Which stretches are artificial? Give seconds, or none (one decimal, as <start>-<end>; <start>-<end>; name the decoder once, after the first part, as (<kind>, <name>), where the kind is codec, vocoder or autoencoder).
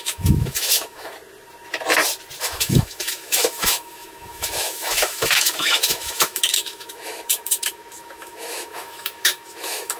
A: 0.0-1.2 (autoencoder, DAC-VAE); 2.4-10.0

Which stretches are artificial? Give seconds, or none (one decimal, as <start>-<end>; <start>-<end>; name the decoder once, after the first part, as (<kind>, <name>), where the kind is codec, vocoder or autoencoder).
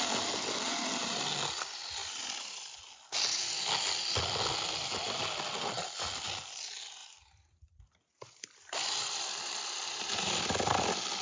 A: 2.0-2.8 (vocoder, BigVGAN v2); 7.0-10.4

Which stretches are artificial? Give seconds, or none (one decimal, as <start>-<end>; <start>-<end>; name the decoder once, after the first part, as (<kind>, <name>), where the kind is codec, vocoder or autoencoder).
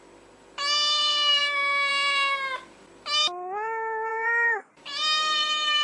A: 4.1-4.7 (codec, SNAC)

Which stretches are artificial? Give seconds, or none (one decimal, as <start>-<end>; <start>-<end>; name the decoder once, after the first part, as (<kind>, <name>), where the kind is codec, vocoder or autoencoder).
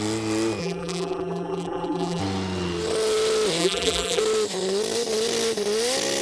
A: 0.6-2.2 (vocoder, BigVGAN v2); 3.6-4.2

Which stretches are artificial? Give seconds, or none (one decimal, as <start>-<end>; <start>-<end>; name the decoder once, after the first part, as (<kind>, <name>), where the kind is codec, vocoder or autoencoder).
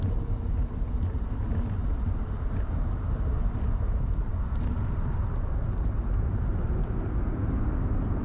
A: none